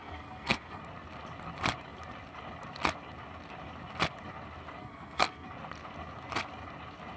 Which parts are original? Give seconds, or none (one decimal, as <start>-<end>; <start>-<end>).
0.8-4.8; 5.5-7.2